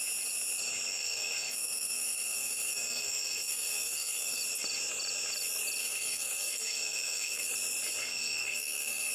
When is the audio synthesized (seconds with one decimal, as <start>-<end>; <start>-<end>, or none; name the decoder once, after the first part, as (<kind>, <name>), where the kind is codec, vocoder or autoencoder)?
0.9-4.4 (codec, SNAC); 5.8-7.5; 8.0-9.1